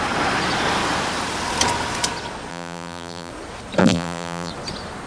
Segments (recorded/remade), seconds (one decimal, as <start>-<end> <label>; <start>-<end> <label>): 0.0-2.5 recorded; 2.5-3.3 remade; 3.3-3.8 recorded; 3.8-4.5 remade; 4.5-5.1 recorded